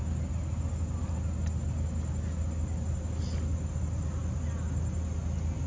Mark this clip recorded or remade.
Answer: recorded